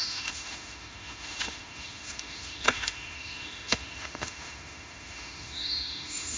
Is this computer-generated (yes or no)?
yes